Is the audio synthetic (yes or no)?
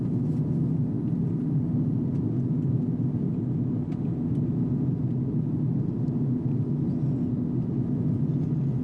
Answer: no